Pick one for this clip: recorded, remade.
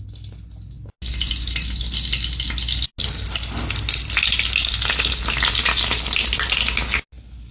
recorded